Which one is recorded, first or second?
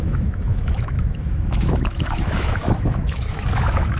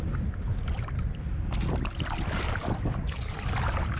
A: second